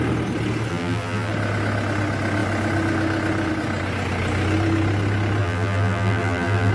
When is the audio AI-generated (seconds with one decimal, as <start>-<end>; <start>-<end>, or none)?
0.7-1.3; 5.4-6.7